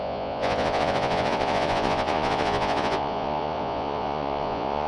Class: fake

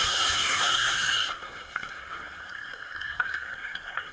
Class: fake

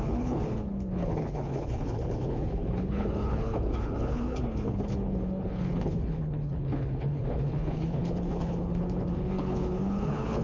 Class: fake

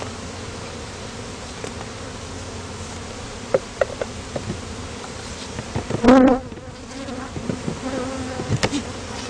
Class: real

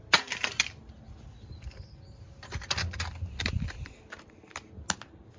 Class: real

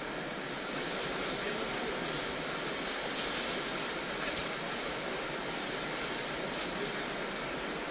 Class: real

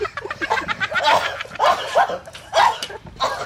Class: fake